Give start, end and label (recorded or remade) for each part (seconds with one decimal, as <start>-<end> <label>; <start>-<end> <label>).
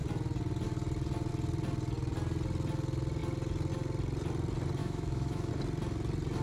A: 0.0-4.8 recorded; 4.8-5.5 remade; 5.5-6.4 recorded